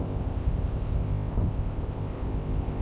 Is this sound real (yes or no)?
no